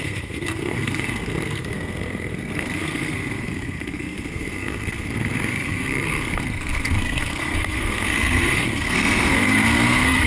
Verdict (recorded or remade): remade